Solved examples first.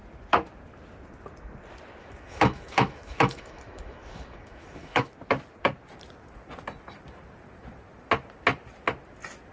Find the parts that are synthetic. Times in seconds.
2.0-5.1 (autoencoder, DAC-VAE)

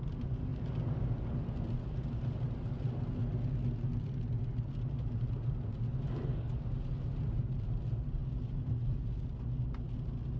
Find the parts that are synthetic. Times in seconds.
none

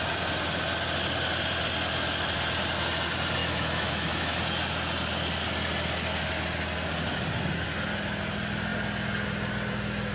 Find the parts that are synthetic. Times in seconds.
3.4-4.4 (autoencoder, DAC-VAE)

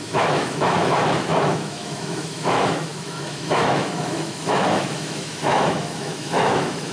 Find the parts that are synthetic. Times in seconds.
0.0-6.9 (autoencoder, DAC-VAE)

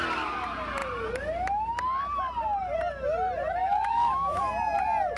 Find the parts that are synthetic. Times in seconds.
3.6-4.4 (autoencoder, DAC-VAE)

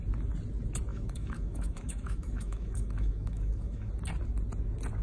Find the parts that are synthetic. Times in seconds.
0.9-3.9 (autoencoder, DAC-VAE)

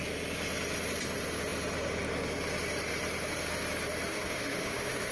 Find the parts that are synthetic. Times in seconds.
4.1-5.1 (autoencoder, DAC-VAE)